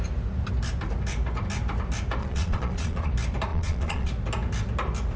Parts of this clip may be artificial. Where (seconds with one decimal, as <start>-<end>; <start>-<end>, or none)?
2.2-3.1; 3.5-4.1